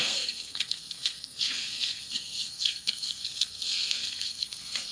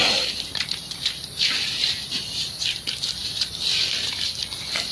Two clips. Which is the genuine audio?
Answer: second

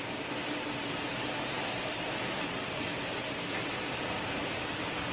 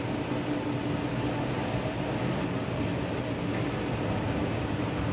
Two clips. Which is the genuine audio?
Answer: second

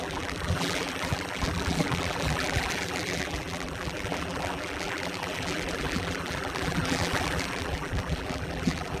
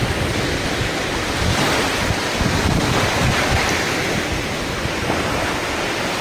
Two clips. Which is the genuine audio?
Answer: second